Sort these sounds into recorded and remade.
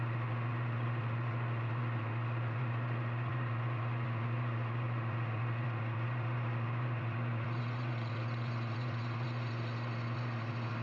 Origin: remade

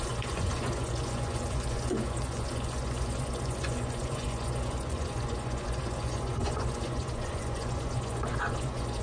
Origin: remade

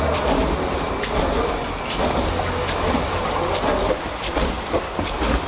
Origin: recorded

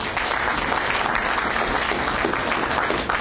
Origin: recorded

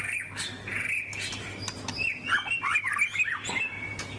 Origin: recorded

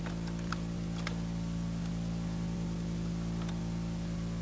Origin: recorded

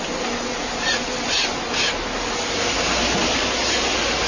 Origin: recorded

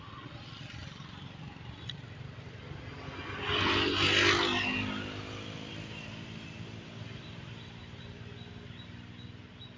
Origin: recorded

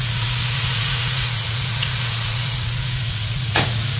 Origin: remade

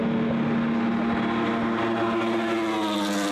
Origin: recorded